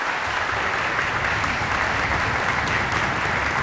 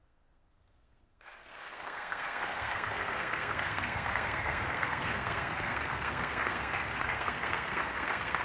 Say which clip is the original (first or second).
first